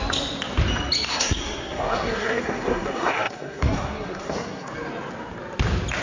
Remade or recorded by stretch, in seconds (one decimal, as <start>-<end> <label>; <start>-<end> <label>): 0.0-1.1 recorded; 1.1-4.7 remade; 4.7-6.0 recorded